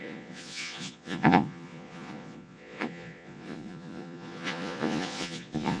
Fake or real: fake